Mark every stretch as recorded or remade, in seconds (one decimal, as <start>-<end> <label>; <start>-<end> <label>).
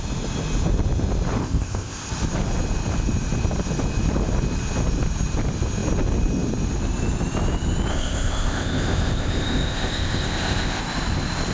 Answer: 0.0-1.4 recorded; 1.4-2.1 remade; 2.1-7.9 recorded; 7.9-10.8 remade; 10.8-11.5 recorded